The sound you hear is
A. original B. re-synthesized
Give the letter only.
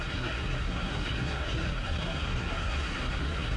B